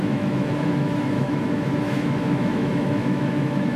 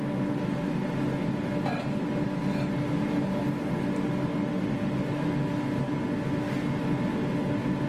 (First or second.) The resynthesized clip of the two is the first